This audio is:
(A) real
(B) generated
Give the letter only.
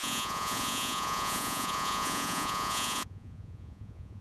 B